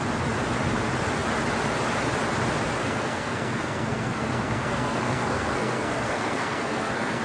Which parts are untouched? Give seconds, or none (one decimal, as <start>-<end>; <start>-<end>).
0.0-2.8